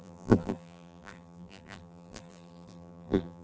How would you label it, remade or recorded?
remade